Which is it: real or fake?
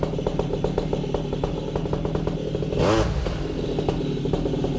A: real